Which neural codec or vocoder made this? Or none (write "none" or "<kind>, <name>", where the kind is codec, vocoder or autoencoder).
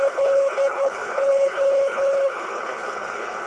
codec, HILCodec